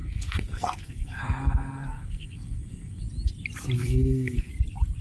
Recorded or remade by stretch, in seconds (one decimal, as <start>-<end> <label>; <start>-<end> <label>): 0.0-3.0 remade; 3.0-3.8 recorded; 3.8-4.5 remade; 4.5-5.0 recorded